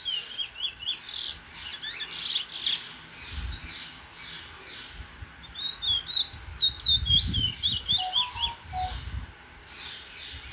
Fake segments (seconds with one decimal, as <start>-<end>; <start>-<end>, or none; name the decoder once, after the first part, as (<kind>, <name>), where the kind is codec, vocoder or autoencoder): none